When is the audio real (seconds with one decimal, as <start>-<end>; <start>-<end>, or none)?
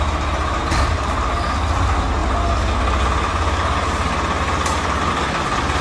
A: 0.0-5.8